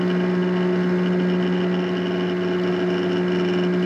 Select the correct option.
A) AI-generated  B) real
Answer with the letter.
B